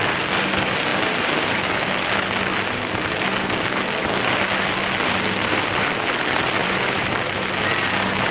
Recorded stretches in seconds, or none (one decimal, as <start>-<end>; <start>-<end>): 0.0-0.9; 1.7-6.6; 7.4-8.3